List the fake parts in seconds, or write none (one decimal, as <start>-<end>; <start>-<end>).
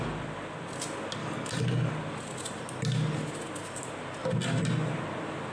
1.2-1.9